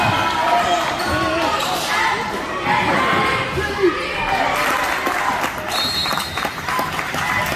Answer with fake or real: real